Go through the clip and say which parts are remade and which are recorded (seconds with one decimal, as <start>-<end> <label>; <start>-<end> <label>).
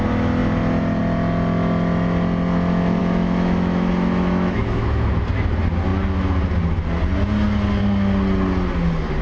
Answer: 0.0-3.0 recorded; 3.0-5.1 remade; 5.1-9.2 recorded